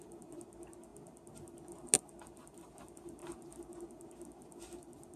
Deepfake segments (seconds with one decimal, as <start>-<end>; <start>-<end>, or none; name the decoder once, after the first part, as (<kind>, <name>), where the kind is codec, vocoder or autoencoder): none